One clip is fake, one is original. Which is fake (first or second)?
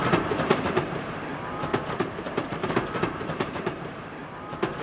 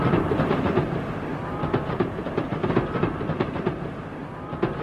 first